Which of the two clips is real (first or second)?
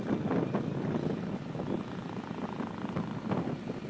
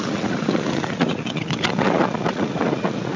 first